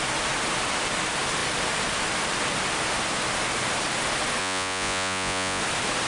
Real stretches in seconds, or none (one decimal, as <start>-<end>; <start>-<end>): 0.0-4.4; 5.6-6.1